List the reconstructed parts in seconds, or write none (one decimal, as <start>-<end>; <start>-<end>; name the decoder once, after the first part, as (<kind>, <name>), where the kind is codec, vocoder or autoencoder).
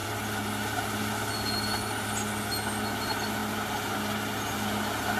none